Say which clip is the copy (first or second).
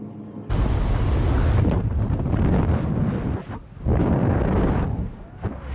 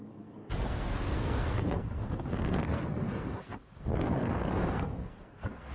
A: second